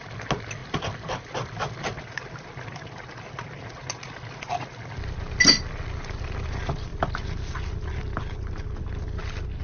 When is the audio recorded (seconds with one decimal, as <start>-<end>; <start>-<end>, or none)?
0.0-9.6